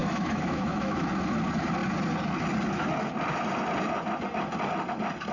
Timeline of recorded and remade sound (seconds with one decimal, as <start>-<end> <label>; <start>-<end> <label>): 0.0-1.1 remade; 1.1-5.3 recorded